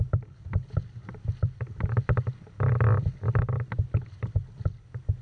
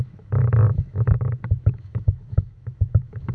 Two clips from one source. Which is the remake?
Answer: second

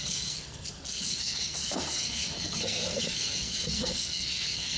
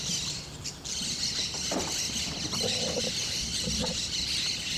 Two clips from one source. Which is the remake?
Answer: first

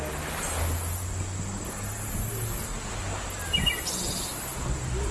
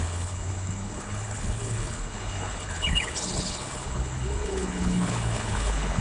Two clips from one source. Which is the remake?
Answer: second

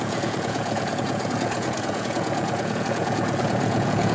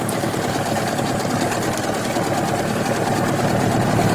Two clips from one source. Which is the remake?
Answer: first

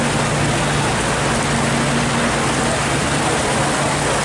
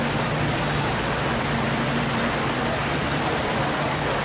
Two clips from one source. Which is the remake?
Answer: second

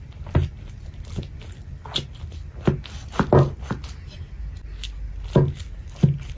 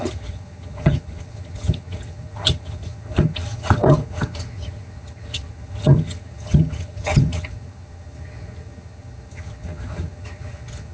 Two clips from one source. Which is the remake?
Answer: second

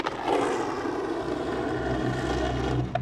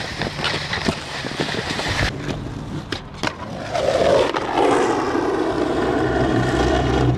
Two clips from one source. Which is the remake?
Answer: second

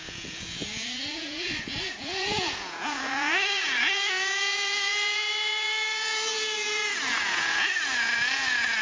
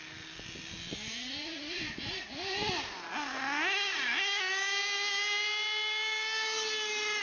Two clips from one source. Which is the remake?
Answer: first